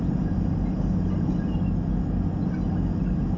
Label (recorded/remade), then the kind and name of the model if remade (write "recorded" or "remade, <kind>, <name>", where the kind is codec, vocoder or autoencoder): recorded